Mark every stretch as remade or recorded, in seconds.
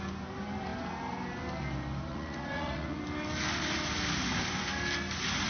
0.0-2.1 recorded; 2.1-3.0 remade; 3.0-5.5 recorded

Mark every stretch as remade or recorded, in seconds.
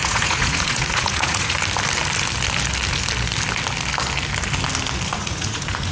0.0-1.6 remade; 1.6-5.1 recorded; 5.1-5.9 remade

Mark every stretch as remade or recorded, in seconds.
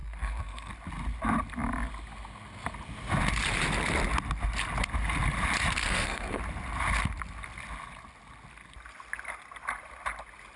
0.0-0.7 remade; 0.7-5.8 recorded; 5.8-6.4 remade; 6.4-10.6 recorded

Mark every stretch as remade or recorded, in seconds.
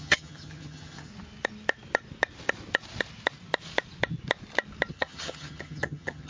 0.0-1.1 remade; 1.1-4.9 recorded; 4.9-6.3 remade